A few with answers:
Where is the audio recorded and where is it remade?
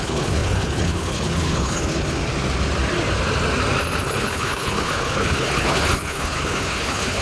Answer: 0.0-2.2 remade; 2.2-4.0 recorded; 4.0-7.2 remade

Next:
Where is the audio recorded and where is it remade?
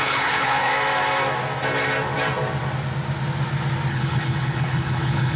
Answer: 0.0-0.7 remade; 0.7-3.9 recorded; 3.9-5.4 remade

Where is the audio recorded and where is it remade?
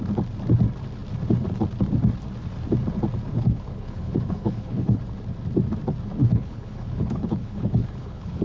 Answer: 0.0-3.3 recorded; 3.3-5.0 remade; 5.0-6.2 recorded; 6.2-8.4 remade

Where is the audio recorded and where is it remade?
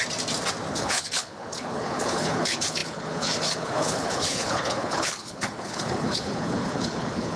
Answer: 0.0-0.7 recorded; 0.7-7.4 remade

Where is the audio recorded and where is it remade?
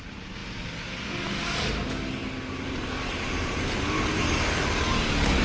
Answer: 0.0-5.4 recorded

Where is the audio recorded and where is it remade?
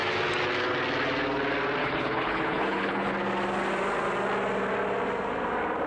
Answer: 0.0-1.8 recorded; 1.8-3.1 remade; 3.1-5.9 recorded